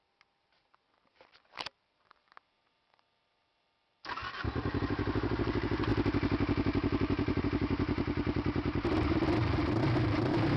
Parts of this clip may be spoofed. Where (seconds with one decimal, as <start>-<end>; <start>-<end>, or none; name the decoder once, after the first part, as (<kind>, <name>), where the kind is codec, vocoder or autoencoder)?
0.0-4.2 (vocoder, BigVGAN v2); 4.8-5.9; 7.4-10.6